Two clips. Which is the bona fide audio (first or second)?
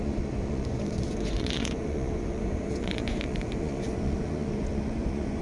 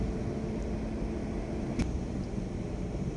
second